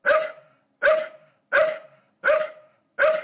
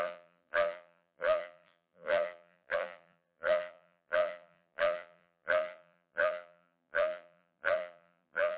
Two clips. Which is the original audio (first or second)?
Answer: first